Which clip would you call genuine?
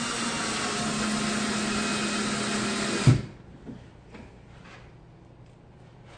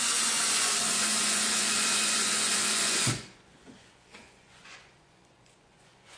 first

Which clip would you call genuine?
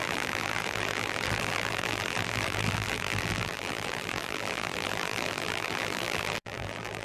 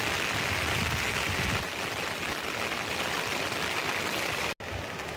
second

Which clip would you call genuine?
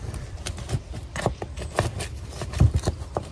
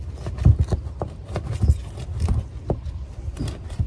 second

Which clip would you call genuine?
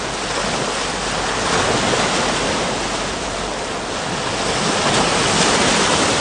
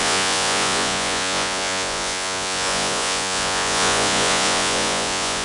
first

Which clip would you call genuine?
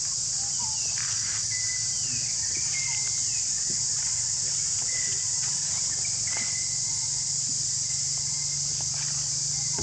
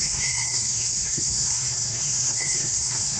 first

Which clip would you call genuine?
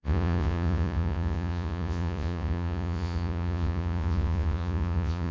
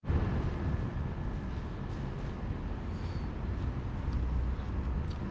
second